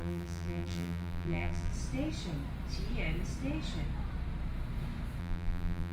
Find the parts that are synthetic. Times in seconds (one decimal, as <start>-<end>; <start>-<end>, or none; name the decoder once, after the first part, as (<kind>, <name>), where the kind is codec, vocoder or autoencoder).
0.0-1.7 (vocoder, BigVGAN v2); 5.2-5.9